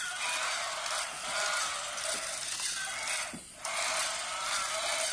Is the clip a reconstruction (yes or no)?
no